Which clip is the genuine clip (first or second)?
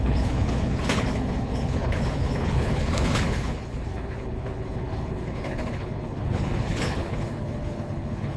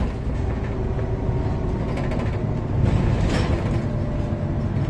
second